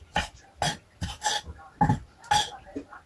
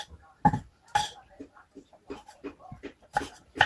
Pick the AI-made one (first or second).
second